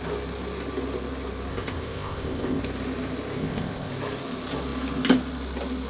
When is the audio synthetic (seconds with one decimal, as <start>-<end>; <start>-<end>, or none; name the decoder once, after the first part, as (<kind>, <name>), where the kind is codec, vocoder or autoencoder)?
1.5-2.6 (codec, ZipCodec); 3.4-3.9